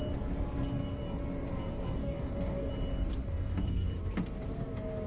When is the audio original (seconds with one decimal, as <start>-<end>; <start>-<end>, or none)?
0.0-2.0; 2.7-3.2; 3.9-5.1